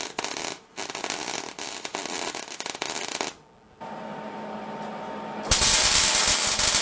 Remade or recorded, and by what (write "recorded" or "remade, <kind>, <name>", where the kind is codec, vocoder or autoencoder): recorded